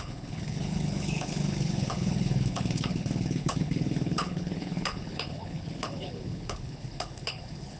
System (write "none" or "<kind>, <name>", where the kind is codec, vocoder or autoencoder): codec, HILCodec